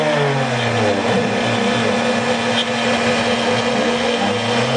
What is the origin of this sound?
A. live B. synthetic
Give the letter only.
A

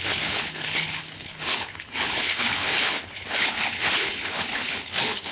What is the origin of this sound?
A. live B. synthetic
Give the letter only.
B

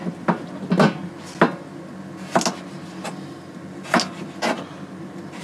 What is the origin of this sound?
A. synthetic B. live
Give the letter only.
B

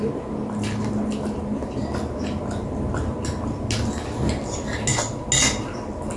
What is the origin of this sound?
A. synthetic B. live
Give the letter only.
B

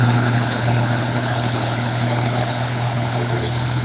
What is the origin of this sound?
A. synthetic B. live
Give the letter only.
A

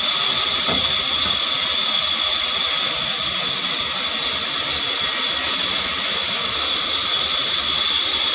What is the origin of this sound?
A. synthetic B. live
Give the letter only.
B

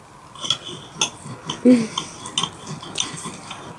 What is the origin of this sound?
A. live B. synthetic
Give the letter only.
A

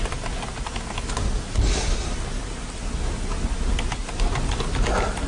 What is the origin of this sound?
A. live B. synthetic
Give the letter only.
A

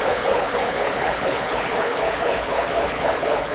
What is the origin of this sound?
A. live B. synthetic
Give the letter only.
B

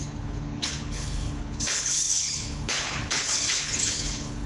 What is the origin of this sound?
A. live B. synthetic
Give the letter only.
B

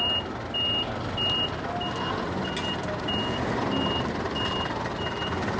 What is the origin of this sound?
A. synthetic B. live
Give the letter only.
B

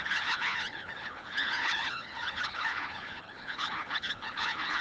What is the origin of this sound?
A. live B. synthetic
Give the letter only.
B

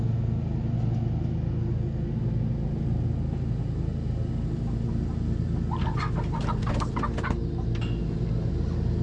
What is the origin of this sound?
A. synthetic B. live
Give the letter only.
B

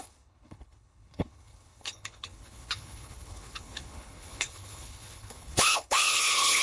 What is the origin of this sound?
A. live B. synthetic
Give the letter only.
B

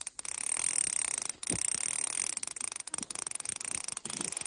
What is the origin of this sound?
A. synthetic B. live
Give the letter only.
B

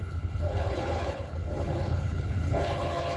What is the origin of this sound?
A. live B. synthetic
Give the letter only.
B